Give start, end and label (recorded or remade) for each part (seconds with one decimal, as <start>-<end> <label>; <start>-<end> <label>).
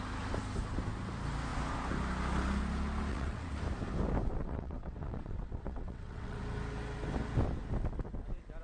0.0-3.1 recorded; 3.1-3.6 remade; 3.6-4.4 recorded; 4.4-6.4 remade; 6.4-8.6 recorded